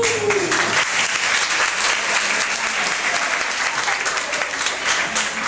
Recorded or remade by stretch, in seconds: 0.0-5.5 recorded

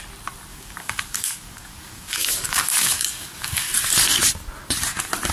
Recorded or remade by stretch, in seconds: 0.0-0.5 recorded; 0.5-3.7 remade; 3.7-5.3 recorded

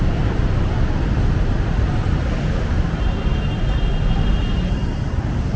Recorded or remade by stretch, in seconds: 0.0-5.6 recorded

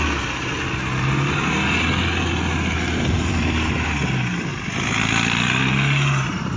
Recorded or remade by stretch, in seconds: 0.0-6.6 recorded

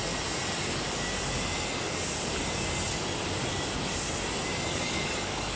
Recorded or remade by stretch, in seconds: 0.0-4.7 recorded; 4.7-5.6 remade